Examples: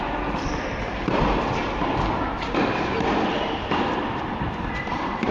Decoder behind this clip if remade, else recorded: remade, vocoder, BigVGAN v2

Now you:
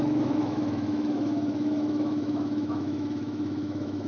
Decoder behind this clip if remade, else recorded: remade, autoencoder, DAC-VAE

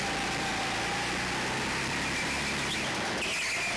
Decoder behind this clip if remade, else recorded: recorded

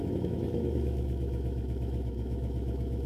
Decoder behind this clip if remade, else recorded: remade, autoencoder, DAC-VAE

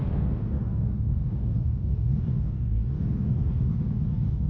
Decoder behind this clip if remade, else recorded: remade, codec, DAC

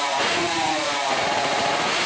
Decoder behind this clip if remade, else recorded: remade, vocoder, Vocos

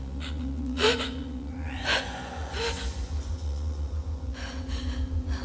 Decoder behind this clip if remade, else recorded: remade, vocoder, Vocos